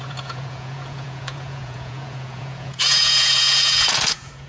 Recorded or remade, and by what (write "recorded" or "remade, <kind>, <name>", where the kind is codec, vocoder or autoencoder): remade, vocoder, Vocos